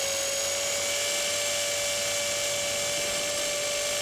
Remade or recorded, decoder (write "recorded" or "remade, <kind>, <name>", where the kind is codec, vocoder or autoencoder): recorded